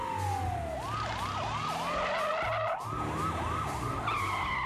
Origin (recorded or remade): recorded